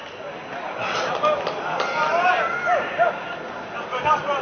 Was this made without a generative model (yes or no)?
yes